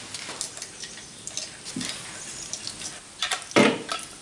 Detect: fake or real real